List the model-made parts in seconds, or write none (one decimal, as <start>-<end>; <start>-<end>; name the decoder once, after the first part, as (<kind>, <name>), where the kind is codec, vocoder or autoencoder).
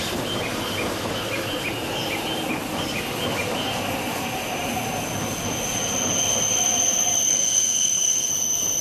7.3-8.3 (codec, SNAC)